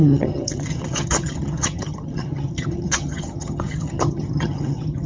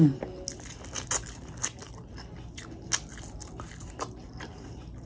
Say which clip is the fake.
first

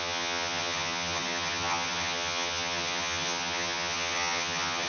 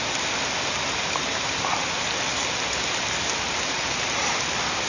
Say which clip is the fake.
first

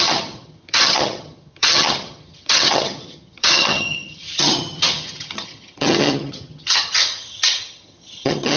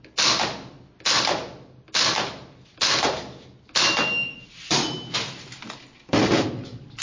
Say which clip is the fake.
first